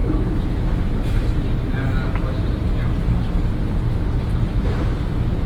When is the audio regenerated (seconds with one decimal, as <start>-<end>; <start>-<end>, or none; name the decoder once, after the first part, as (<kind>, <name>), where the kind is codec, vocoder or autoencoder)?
0.0-1.2 (autoencoder, DAC-VAE); 4.5-5.5